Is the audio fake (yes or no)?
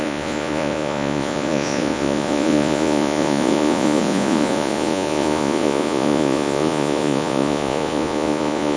yes